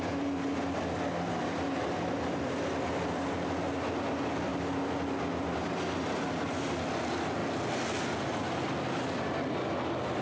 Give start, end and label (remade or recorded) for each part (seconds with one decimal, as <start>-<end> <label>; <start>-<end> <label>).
0.0-10.2 recorded

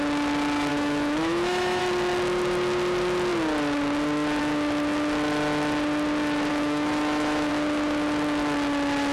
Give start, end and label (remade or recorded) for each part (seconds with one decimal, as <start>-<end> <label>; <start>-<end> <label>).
0.0-0.7 recorded; 0.7-1.8 remade; 1.8-6.5 recorded; 6.5-7.5 remade; 7.5-9.1 recorded

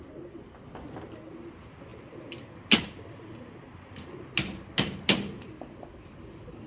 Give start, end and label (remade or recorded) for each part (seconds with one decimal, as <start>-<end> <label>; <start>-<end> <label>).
0.0-6.7 recorded

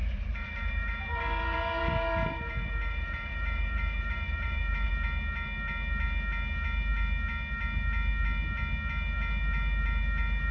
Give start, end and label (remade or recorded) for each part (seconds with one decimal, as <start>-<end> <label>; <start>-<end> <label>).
0.0-4.9 remade; 4.9-10.5 recorded

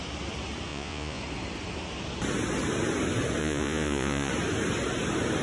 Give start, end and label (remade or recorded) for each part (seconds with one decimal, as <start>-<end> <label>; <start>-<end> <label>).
0.0-0.7 recorded; 0.7-1.2 remade; 1.2-3.4 recorded; 3.4-4.3 remade; 4.3-5.4 recorded